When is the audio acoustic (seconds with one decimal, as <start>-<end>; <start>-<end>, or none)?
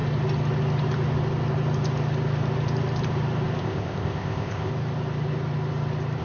0.0-3.6; 4.7-6.2